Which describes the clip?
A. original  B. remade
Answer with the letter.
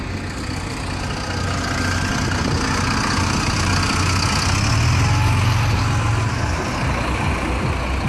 A